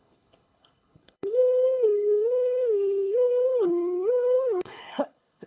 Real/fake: fake